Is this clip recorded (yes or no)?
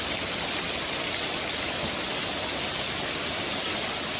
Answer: yes